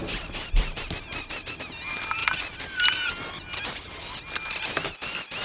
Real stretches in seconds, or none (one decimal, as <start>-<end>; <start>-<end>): 0.0-5.4